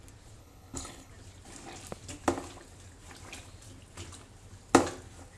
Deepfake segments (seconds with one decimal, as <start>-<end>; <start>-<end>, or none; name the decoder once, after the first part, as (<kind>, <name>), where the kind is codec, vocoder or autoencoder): 0.4-1.1 (codec, HILCodec)